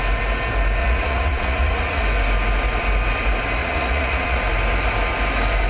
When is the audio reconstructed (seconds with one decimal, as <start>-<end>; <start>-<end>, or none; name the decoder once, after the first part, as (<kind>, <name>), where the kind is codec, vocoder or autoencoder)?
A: 0.8-2.0 (vocoder, Vocos); 3.6-4.4